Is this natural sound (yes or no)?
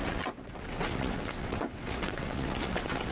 no